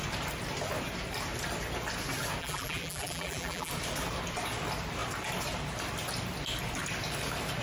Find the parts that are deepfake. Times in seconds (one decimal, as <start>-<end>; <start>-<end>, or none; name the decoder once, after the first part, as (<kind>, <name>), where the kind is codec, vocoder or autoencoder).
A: 2.4-3.7 (vocoder, BigVGAN v2)